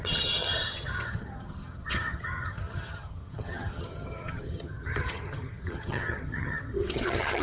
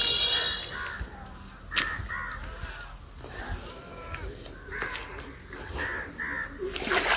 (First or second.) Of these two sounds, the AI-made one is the first